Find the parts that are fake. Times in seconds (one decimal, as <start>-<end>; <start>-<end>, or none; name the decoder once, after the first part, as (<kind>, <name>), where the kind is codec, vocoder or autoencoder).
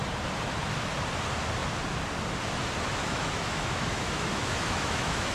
3.0-5.3 (autoencoder, DAC-VAE)